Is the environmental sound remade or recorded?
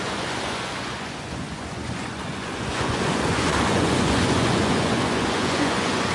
remade